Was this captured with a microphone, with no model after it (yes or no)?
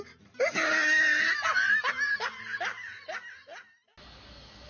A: yes